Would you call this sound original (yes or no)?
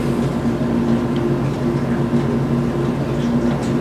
yes